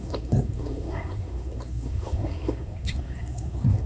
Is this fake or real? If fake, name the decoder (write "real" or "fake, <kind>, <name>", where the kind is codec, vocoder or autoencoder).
fake, codec, SNAC